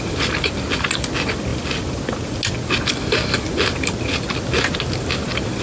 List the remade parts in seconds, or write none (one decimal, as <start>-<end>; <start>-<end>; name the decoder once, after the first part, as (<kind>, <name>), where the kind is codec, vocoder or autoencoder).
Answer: none